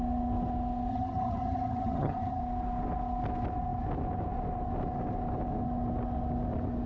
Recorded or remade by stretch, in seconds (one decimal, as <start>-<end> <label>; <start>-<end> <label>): 0.0-0.9 recorded; 0.9-2.4 remade; 2.4-6.9 recorded